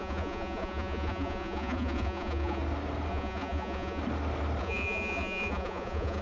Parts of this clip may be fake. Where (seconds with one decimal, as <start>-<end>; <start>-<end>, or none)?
0.0-2.6; 3.1-4.0; 4.6-6.2